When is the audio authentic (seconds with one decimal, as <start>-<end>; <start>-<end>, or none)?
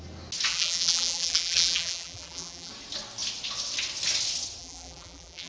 0.0-0.5; 2.7-4.6